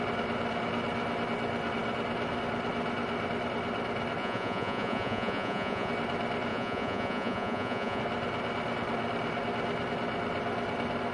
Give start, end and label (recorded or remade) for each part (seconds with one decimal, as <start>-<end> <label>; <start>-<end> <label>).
0.0-4.2 recorded; 4.2-5.9 remade; 5.9-6.5 recorded; 6.5-8.0 remade; 8.0-11.1 recorded